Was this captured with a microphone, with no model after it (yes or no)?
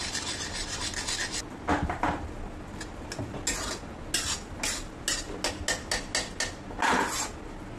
yes